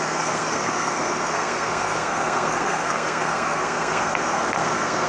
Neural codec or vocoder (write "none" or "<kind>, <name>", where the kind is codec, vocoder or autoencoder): codec, SNAC